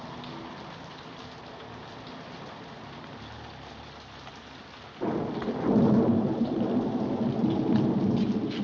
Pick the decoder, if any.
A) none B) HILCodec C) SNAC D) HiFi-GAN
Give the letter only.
A